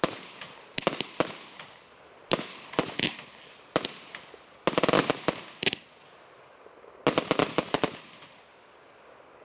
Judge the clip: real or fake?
real